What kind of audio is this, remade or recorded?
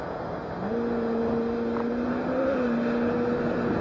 recorded